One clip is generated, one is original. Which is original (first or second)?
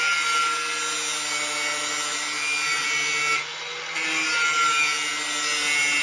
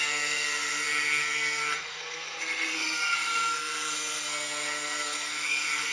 first